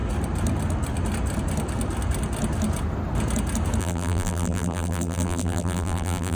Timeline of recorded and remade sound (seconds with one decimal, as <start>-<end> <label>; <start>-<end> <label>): 0.0-3.8 recorded; 3.8-6.3 remade